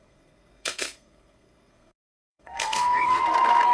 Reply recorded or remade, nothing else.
remade